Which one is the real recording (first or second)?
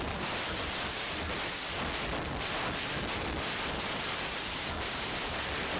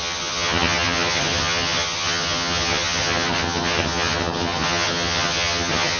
first